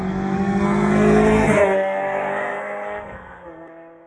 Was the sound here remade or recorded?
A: remade